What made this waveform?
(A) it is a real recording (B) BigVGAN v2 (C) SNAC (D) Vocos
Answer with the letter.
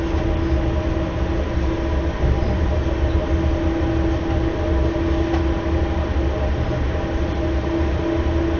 A